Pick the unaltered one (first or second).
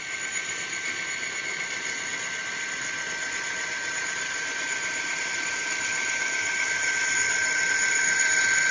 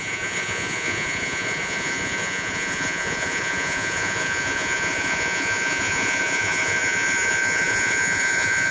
first